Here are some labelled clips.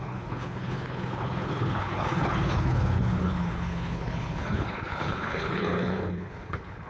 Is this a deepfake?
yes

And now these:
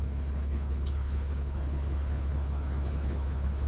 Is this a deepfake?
yes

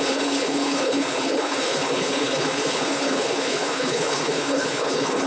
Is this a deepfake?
yes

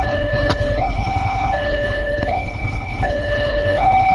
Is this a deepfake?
yes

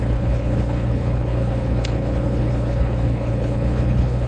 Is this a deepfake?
yes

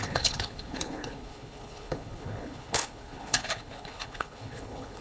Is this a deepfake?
yes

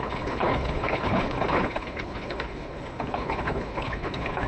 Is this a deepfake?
yes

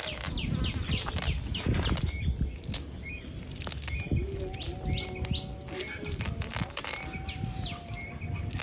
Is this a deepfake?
no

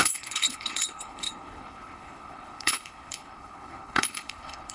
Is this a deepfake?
yes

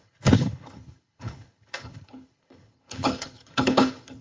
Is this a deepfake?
yes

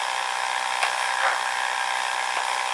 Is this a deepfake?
no